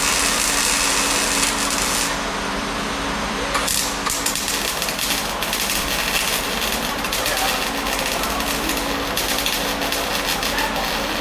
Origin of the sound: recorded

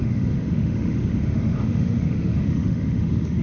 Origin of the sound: remade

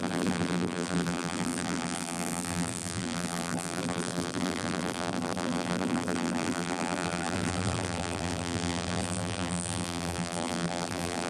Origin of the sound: remade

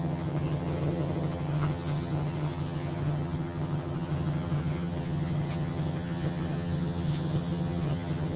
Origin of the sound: remade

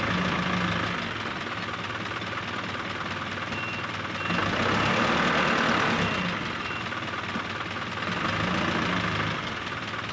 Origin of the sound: recorded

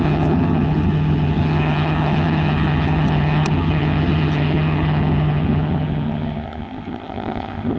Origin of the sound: remade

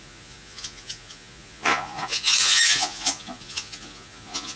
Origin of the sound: remade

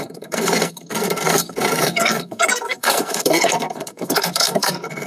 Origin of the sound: remade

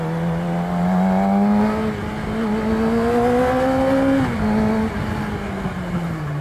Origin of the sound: recorded